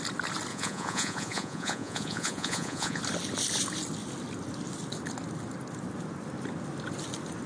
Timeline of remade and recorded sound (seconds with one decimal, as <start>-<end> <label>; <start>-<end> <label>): 0.0-0.5 recorded; 0.5-3.0 remade; 3.0-7.5 recorded